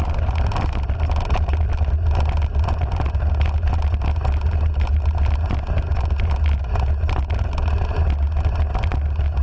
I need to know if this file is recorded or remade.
recorded